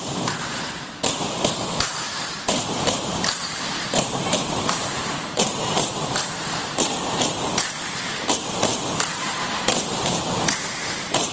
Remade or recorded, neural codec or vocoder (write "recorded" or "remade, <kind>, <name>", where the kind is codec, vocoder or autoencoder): remade, vocoder, BigVGAN v2